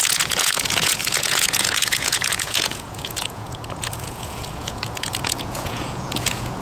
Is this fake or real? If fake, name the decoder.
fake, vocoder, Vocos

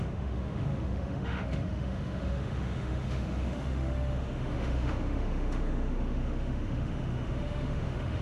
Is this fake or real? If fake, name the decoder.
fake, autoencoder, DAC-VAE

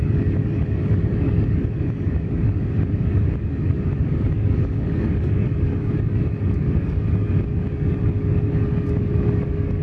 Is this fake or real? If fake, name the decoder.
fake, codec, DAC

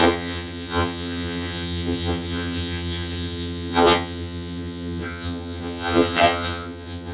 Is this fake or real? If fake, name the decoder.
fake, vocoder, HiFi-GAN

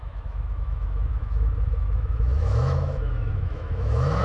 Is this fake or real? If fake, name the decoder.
fake, autoencoder, DAC-VAE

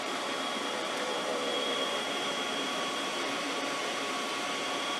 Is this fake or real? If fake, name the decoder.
fake, vocoder, BigVGAN v2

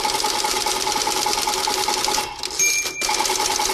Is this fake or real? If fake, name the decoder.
real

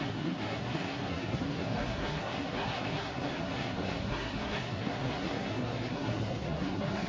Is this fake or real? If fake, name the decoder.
fake, codec, SNAC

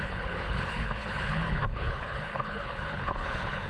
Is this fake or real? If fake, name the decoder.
fake, codec, HILCodec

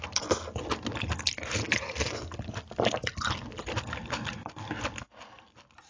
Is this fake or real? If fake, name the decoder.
real